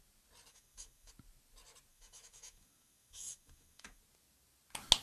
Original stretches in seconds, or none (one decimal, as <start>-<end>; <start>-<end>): 0.0-0.5; 1.1-1.9; 4.0-5.0